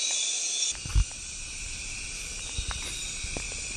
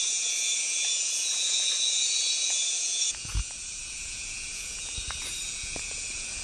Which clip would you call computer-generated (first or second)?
second